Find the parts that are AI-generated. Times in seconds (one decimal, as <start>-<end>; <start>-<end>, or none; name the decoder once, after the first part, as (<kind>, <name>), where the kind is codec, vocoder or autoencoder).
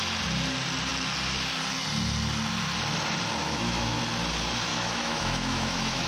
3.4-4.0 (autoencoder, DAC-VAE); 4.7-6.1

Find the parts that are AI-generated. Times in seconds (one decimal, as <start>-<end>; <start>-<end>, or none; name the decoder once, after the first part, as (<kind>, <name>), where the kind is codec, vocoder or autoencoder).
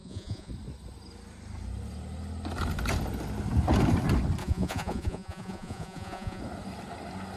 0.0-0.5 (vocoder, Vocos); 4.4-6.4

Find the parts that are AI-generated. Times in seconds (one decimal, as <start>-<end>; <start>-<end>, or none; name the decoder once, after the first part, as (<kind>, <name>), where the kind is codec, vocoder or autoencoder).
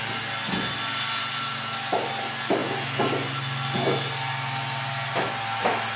none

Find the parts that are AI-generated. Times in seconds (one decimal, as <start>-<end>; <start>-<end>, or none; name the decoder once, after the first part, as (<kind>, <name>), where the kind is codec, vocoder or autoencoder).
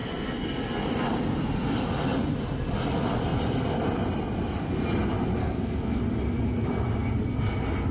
5.4-6.0 (codec, SNAC)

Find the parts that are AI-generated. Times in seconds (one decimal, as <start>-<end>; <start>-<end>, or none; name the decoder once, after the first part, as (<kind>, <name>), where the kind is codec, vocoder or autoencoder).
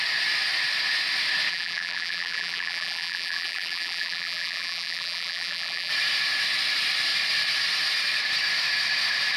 1.5-5.9 (vocoder, BigVGAN v2)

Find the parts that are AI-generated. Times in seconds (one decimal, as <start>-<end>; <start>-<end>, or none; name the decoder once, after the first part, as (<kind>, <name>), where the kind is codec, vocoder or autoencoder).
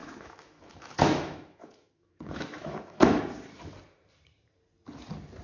0.0-3.2 (autoencoder, DAC-VAE)